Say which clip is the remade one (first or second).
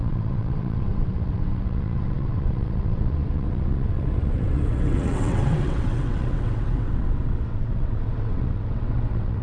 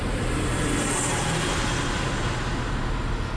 first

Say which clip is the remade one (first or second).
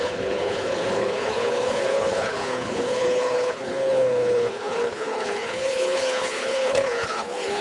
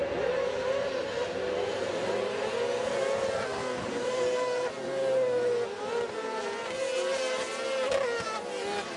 first